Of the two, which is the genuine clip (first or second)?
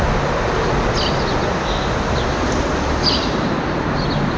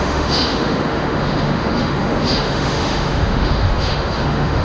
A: first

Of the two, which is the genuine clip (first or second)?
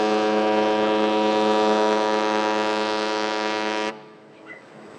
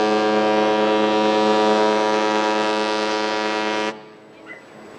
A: second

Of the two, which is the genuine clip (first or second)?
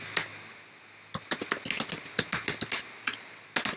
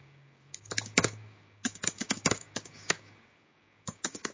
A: first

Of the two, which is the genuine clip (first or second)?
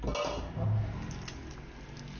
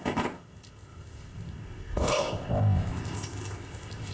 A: first